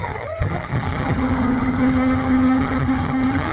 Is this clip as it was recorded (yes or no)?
no